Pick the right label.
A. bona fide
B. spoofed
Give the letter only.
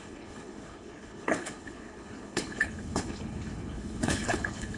B